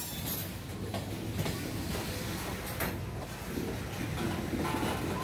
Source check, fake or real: real